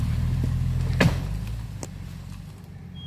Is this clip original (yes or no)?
yes